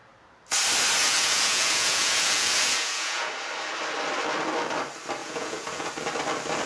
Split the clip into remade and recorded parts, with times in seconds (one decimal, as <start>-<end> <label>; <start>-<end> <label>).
0.0-1.0 recorded; 1.0-3.3 remade; 3.3-5.2 recorded; 5.2-5.9 remade; 5.9-6.7 recorded